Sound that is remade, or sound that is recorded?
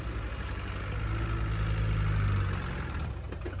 recorded